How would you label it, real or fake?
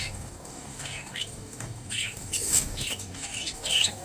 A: fake